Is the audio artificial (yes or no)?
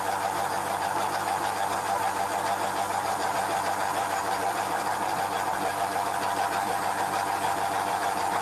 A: yes